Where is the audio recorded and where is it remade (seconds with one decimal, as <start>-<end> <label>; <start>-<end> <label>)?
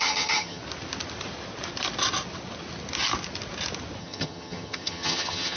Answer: 0.0-0.6 remade; 0.6-4.0 recorded; 4.0-5.6 remade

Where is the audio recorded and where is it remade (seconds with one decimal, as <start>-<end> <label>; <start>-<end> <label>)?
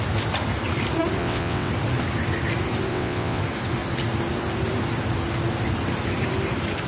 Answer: 0.0-1.2 recorded; 1.2-1.7 remade; 1.7-2.9 recorded; 2.9-3.4 remade; 3.4-6.9 recorded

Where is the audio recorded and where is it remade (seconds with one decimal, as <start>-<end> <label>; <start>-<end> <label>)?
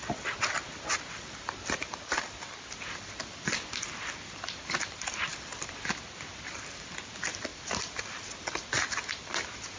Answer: 0.0-5.3 recorded; 5.3-5.9 remade; 5.9-7.5 recorded; 7.5-8.7 remade; 8.7-9.8 recorded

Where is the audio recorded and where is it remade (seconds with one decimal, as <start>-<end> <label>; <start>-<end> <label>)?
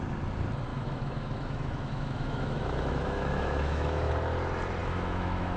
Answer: 0.0-0.7 recorded; 0.7-4.1 remade; 4.1-4.8 recorded; 4.8-5.6 remade